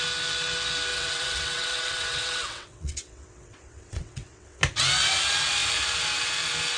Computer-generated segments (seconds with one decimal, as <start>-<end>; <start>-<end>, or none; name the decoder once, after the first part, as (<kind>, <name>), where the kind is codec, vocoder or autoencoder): 0.9-4.6 (vocoder, WaveNeXt)